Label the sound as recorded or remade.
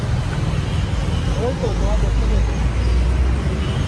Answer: recorded